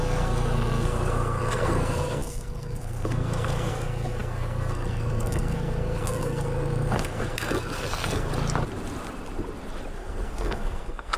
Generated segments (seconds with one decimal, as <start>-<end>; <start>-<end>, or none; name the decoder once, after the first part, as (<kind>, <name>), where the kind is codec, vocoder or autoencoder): 0.0-8.3 (codec, SNAC); 9.9-11.2